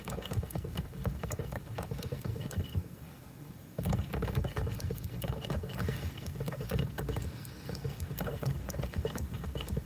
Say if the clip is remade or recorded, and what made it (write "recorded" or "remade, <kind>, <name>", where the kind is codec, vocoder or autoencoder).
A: remade, codec, SNAC